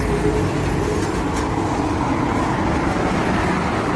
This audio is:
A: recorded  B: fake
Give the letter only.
A